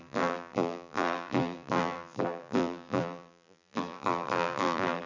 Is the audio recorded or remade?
remade